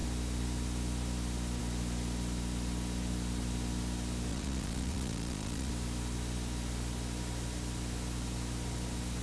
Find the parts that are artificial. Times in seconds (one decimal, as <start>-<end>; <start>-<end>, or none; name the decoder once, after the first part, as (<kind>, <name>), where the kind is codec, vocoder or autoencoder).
4.3-5.7 (vocoder, Vocos)